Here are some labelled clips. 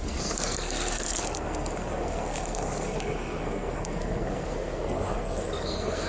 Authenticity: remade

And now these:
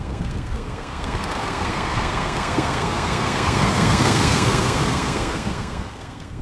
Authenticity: remade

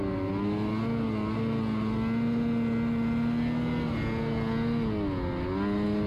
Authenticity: recorded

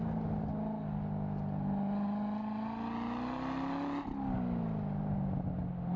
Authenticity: recorded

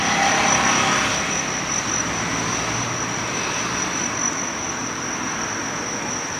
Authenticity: recorded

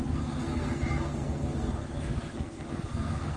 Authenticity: remade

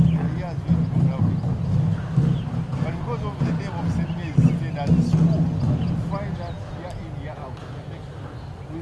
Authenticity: recorded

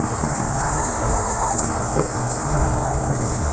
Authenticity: remade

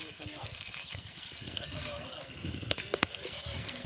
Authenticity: remade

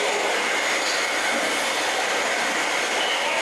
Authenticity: recorded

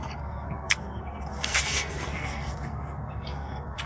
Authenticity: remade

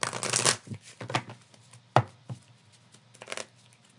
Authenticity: recorded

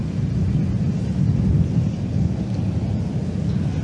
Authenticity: recorded